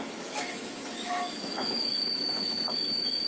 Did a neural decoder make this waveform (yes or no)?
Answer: yes